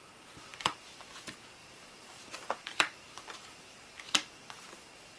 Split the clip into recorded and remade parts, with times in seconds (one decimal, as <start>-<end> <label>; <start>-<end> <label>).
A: 0.0-0.5 recorded; 0.5-1.0 remade; 1.0-1.6 recorded; 1.6-4.7 remade; 4.7-5.2 recorded